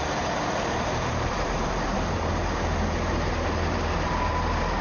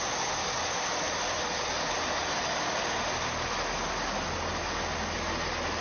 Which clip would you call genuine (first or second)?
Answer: second